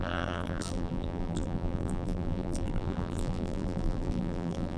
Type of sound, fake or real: fake